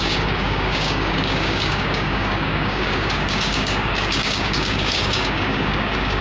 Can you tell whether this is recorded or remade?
remade